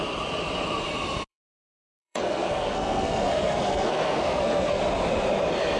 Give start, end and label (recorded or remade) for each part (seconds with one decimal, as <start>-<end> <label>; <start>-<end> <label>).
0.0-1.3 recorded; 1.3-4.8 remade; 4.8-5.8 recorded